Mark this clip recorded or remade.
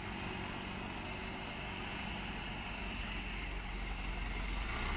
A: recorded